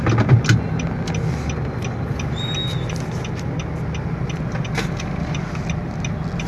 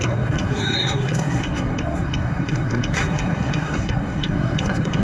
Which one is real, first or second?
first